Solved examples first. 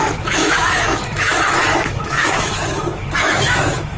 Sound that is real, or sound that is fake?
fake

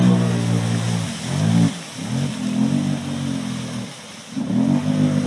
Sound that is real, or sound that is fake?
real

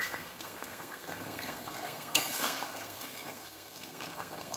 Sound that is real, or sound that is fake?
fake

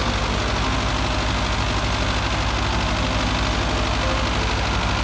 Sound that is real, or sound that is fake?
real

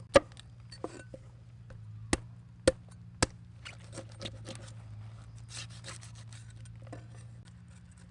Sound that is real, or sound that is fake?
real